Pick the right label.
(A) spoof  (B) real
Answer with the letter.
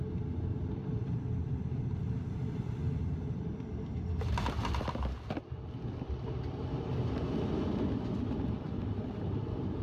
B